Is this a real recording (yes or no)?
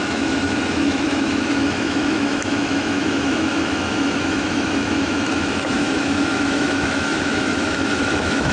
no